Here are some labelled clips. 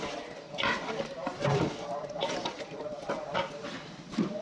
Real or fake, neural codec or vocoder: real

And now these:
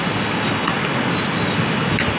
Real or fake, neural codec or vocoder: real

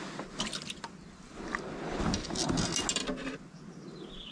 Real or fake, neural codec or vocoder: real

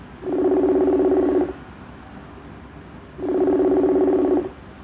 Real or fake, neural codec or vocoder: real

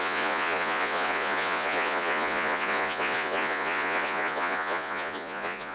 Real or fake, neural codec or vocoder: fake, vocoder, Vocos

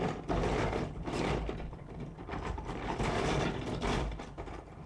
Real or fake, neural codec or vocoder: real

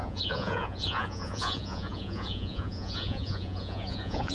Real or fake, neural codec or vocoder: fake, vocoder, Vocos